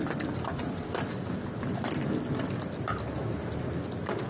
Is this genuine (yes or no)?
yes